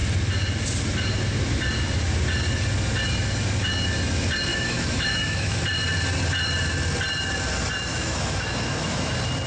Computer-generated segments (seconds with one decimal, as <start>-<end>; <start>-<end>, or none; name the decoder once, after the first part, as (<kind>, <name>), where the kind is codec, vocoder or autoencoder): 4.5-5.6 (autoencoder, DAC-VAE); 7.9-9.1